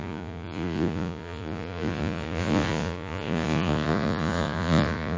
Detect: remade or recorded remade